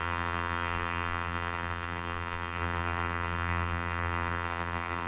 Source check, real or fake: fake